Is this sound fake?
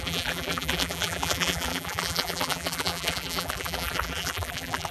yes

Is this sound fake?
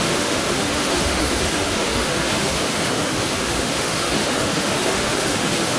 yes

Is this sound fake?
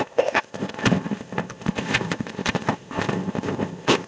yes